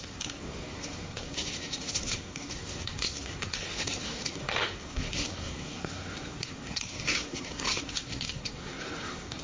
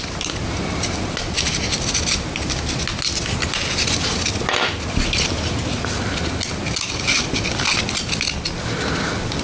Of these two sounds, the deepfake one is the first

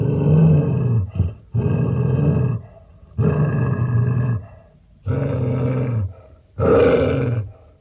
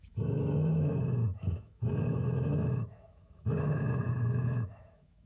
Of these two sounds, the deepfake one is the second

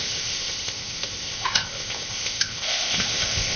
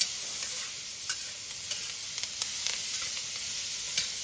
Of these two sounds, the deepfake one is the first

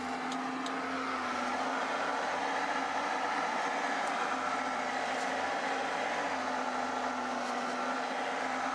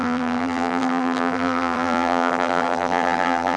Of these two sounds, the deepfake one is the second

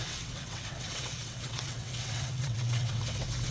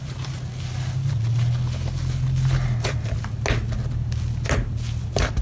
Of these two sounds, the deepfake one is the first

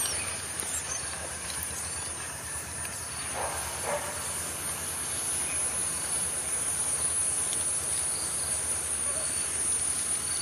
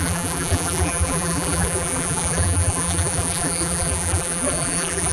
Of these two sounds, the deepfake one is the second